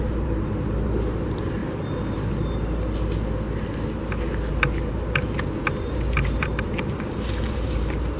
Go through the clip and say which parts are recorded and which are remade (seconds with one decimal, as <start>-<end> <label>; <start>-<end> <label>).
0.0-1.6 remade; 1.6-4.5 recorded; 4.5-8.2 remade